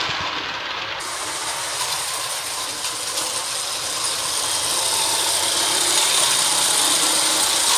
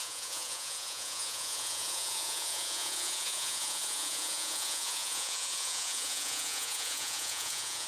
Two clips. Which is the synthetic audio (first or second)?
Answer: second